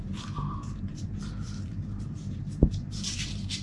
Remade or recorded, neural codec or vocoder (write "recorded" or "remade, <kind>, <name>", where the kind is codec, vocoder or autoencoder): remade, vocoder, BigVGAN v2